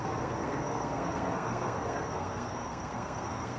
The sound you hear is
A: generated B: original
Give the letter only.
A